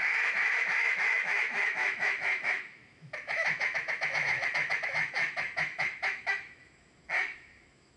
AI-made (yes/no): yes